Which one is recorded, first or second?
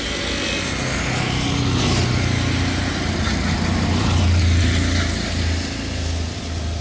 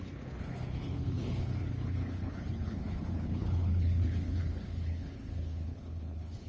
first